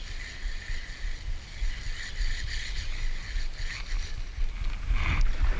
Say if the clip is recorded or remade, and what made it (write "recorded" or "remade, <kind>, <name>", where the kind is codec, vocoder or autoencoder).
recorded